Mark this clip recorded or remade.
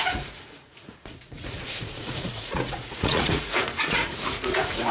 remade